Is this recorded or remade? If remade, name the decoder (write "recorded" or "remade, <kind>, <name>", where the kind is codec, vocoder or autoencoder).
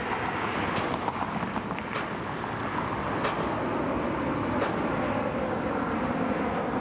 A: recorded